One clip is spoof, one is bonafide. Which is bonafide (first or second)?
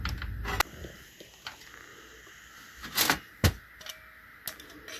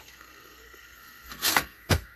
first